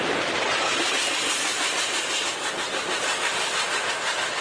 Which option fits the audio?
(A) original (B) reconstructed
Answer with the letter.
B